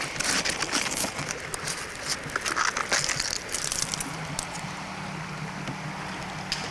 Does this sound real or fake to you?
real